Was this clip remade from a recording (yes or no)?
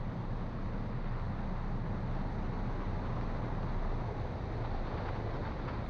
no